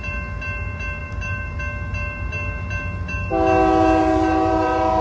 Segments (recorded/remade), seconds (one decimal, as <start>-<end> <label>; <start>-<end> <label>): 0.0-1.0 recorded; 1.0-1.6 remade; 1.6-4.0 recorded; 4.0-5.0 remade